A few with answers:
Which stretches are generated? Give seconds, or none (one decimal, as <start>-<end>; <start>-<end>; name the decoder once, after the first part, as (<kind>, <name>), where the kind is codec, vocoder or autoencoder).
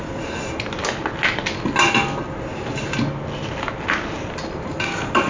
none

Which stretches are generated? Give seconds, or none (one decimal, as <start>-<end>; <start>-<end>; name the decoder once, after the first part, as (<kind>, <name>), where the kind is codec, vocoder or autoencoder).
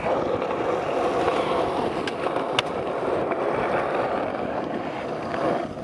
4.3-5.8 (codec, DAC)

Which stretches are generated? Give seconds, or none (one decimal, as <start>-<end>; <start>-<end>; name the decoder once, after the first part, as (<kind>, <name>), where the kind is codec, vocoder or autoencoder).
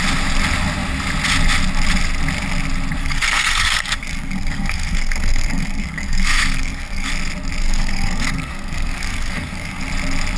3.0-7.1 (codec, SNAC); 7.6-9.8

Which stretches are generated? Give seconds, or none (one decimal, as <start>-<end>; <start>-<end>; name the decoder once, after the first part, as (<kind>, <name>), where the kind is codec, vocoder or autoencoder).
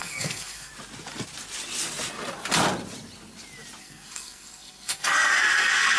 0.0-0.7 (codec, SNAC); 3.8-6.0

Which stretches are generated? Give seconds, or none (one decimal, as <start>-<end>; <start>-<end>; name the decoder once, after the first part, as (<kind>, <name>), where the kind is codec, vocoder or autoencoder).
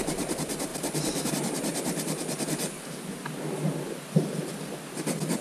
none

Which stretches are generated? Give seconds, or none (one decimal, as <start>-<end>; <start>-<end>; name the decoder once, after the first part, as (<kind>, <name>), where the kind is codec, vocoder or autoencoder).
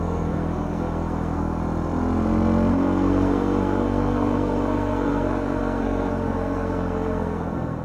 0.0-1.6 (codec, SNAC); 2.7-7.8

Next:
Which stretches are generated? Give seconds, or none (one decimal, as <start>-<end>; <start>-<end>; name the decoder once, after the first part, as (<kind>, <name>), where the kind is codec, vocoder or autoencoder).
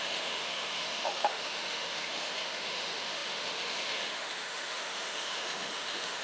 0.0-6.2 (autoencoder, DAC-VAE)